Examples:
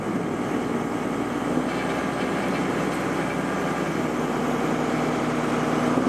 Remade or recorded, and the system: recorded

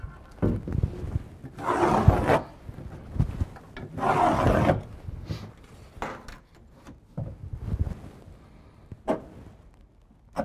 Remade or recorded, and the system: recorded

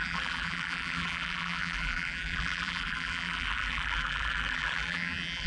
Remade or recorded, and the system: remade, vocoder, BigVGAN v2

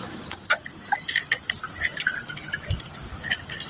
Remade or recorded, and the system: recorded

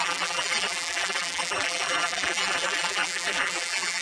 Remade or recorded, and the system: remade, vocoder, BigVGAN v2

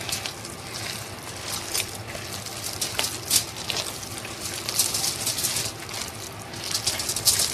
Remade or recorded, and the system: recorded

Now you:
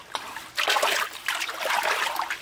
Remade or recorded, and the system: remade, vocoder, BigVGAN v2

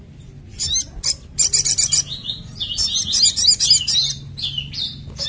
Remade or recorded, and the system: recorded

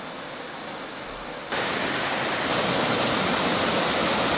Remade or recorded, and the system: recorded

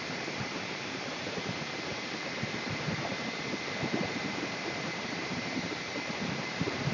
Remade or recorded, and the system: remade, vocoder, BigVGAN v2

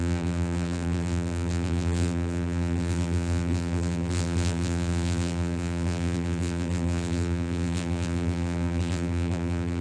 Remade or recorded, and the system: remade, vocoder, BigVGAN v2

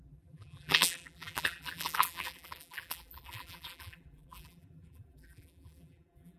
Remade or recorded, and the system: remade, vocoder, BigVGAN v2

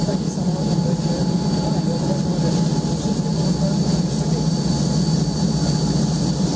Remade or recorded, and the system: recorded